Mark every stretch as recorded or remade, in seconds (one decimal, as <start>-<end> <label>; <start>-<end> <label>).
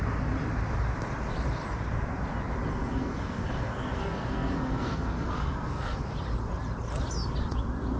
0.0-2.7 recorded; 2.7-6.0 remade; 6.0-8.0 recorded